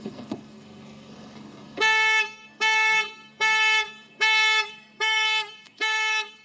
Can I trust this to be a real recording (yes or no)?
no